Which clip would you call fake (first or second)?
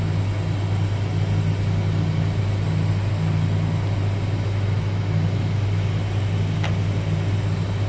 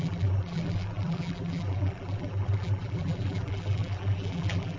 second